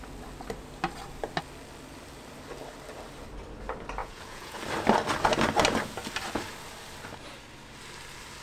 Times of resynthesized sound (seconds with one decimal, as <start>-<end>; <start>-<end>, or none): 4.0-4.6